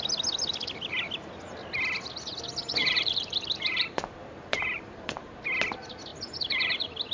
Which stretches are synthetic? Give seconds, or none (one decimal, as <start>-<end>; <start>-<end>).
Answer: 2.8-5.3; 6.1-7.1